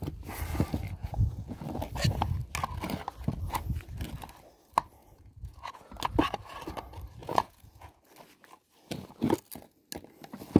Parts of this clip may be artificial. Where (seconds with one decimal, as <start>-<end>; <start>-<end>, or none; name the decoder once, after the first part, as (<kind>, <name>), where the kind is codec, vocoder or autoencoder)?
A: 1.0-1.6 (vocoder, Vocos); 5.0-5.9; 7.2-8.0